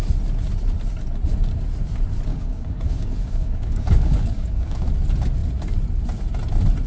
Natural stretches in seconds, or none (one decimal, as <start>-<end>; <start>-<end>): 0.0-2.3; 4.9-6.9